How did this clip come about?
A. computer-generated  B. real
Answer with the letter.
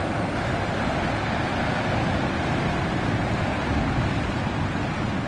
B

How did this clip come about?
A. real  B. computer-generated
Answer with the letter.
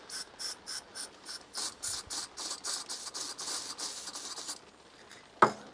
A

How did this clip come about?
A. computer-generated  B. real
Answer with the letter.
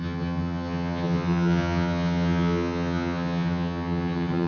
A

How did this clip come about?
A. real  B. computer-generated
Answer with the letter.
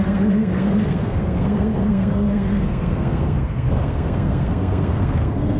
B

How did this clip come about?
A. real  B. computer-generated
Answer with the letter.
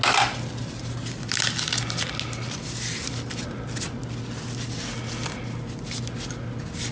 A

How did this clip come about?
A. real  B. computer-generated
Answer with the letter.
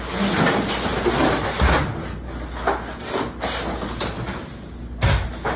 A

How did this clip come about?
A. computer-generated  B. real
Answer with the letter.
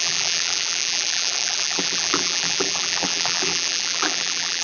A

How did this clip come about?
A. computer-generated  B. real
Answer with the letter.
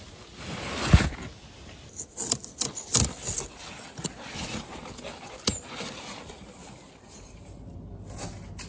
B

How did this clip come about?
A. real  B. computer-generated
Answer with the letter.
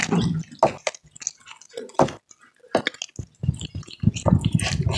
A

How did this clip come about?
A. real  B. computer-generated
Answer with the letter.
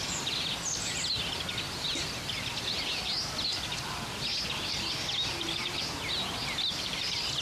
A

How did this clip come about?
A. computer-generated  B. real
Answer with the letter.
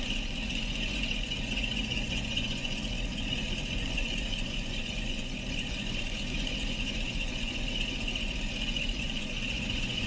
A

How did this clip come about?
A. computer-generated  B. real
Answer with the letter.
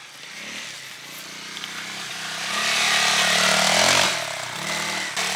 B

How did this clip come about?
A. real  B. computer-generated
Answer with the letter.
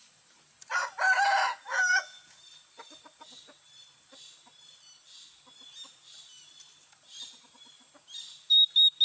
A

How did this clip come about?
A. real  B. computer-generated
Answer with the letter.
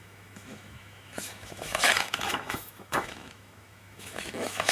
B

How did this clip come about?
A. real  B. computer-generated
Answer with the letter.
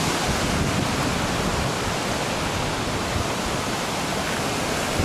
A